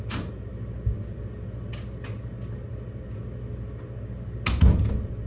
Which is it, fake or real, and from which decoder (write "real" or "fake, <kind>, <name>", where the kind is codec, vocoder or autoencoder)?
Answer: real